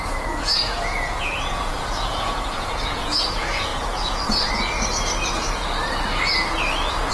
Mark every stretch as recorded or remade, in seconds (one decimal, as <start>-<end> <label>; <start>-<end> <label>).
0.0-3.7 remade; 3.7-7.1 recorded